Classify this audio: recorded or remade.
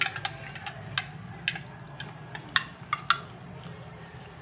recorded